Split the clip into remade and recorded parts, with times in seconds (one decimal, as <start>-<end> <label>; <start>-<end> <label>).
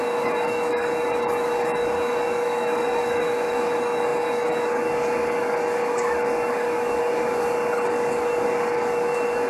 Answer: 0.0-9.5 remade